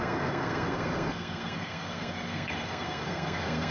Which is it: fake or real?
fake